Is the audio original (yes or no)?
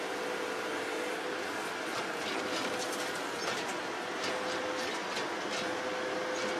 yes